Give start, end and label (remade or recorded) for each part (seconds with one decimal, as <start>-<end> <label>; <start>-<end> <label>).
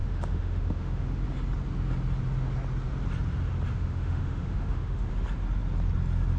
0.0-1.2 remade; 1.2-3.7 recorded; 3.7-5.1 remade; 5.1-6.4 recorded